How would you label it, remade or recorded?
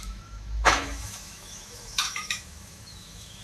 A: remade